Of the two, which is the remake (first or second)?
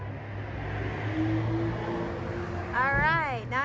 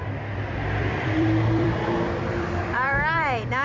second